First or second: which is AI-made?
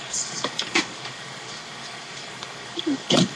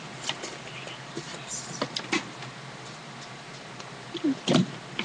first